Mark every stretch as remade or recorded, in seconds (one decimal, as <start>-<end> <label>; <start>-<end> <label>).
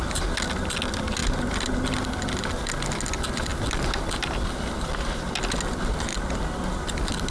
0.0-7.3 recorded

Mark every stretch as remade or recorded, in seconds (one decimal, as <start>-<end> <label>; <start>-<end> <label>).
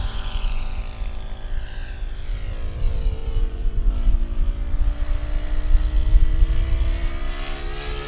0.0-0.8 remade; 0.8-3.2 recorded; 3.2-3.9 remade; 3.9-8.1 recorded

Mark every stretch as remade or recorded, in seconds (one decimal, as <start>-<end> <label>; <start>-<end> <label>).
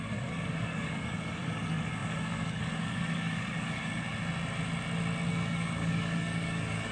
0.0-4.1 remade; 4.1-5.3 recorded; 5.3-6.9 remade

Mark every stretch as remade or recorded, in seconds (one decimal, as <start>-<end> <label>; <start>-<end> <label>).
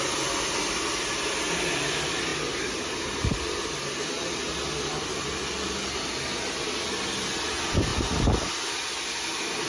0.0-9.7 recorded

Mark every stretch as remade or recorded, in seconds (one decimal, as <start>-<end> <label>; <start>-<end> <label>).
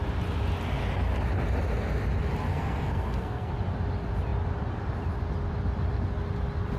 0.0-2.5 recorded; 2.5-3.5 remade; 3.5-6.8 recorded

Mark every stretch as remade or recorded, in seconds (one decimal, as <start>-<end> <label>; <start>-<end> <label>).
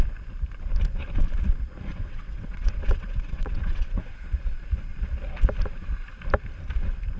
0.0-1.9 recorded; 1.9-4.0 remade; 4.0-7.2 recorded